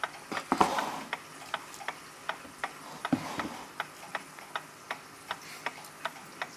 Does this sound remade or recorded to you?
recorded